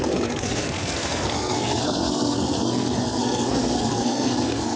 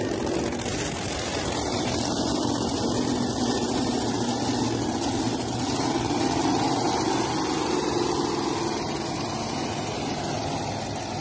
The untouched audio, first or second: second